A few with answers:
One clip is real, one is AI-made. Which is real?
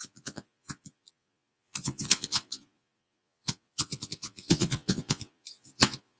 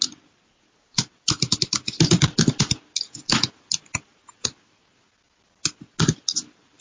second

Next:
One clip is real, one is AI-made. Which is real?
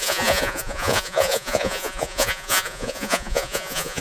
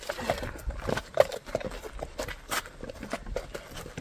second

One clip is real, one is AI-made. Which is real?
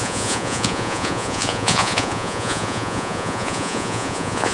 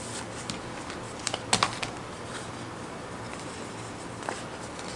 second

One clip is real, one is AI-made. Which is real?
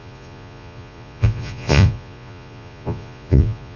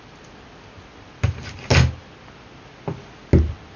second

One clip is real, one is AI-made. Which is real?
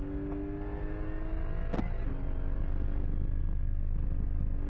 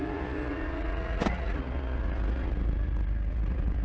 first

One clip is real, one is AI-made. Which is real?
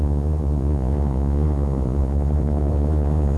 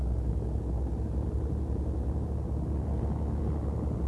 second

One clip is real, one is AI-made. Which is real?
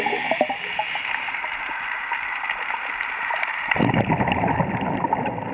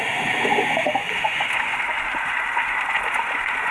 first